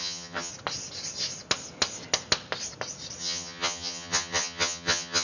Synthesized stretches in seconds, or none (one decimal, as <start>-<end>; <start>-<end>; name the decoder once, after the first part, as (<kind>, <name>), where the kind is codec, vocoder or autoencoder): 0.0-0.5 (vocoder, HiFi-GAN); 3.2-5.2